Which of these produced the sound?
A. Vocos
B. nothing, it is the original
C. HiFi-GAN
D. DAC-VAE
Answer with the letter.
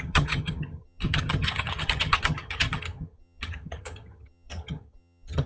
C